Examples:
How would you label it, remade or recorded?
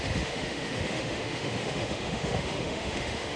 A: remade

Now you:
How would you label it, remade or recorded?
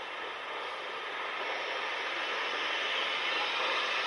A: recorded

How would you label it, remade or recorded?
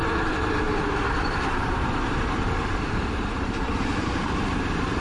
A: remade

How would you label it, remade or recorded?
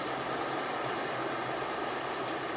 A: recorded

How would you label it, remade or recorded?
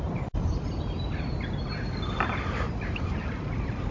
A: recorded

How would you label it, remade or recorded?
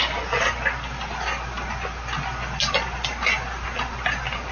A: recorded